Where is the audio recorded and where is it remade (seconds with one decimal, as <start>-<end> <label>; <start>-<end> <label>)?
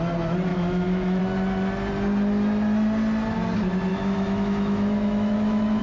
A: 0.0-0.5 recorded; 0.5-1.2 remade; 1.2-3.9 recorded; 3.9-5.8 remade